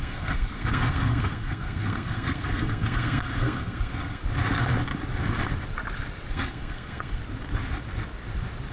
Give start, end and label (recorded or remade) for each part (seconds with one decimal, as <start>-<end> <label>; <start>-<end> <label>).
0.0-4.2 remade; 4.2-6.3 recorded; 6.3-7.2 remade; 7.2-8.7 recorded